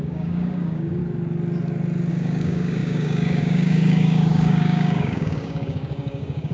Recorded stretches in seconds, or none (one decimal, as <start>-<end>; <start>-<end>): 1.0-2.1